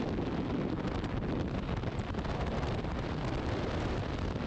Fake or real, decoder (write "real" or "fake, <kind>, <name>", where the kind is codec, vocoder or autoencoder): real